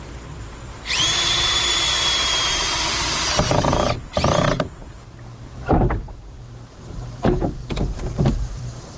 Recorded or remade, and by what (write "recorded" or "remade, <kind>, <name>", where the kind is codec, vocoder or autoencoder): remade, vocoder, BigVGAN v2